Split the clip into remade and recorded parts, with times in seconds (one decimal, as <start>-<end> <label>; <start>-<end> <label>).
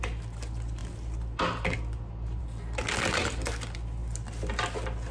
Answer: 0.0-5.1 recorded